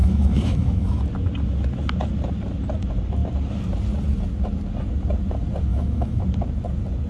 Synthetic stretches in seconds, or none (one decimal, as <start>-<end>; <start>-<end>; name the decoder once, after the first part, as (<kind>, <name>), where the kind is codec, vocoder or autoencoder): 0.0-1.0 (autoencoder, DAC-VAE); 5.7-6.2